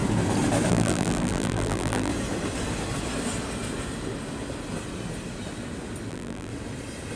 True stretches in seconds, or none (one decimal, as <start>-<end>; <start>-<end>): 0.0-0.7; 2.1-6.1; 6.5-7.2